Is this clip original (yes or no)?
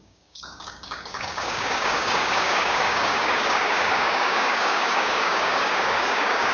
no